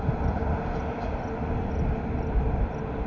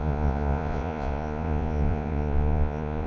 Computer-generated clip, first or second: second